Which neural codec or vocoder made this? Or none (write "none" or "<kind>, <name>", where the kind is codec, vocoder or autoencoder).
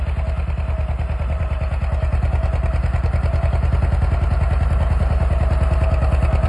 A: none